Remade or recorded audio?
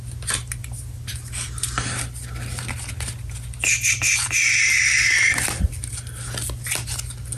recorded